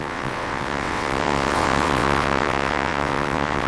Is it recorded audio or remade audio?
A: remade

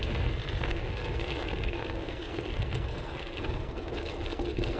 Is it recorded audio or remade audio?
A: remade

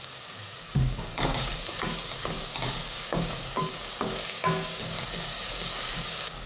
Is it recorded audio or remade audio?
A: remade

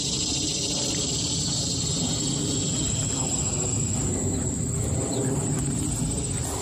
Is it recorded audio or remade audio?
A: recorded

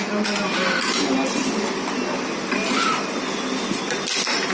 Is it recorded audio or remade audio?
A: recorded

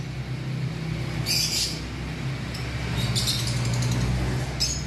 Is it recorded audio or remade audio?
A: recorded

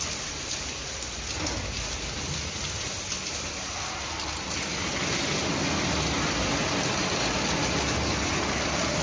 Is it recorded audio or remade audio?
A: recorded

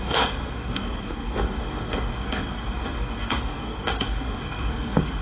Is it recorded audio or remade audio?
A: remade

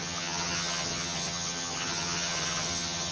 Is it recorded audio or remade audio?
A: remade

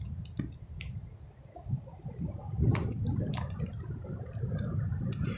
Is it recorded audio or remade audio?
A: recorded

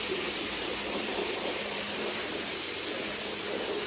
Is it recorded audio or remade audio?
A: remade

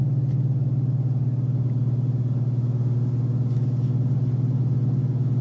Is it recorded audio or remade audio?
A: recorded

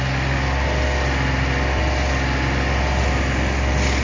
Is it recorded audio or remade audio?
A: recorded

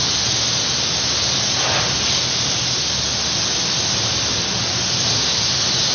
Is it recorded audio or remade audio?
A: recorded